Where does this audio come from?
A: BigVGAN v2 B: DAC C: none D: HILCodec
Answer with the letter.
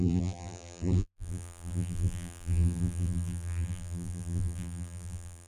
A